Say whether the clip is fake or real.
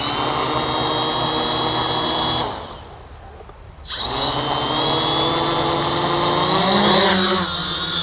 real